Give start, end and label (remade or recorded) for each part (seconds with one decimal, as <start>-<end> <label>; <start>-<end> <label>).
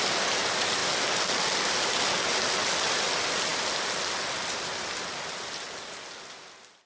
0.0-6.9 recorded